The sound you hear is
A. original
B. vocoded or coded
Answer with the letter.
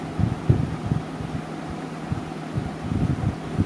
A